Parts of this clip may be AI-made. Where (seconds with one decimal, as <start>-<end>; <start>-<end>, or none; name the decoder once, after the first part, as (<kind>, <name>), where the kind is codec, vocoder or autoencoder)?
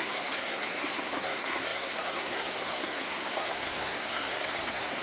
0.0-5.0 (codec, SNAC)